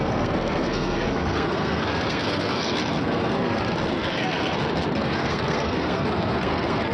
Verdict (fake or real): fake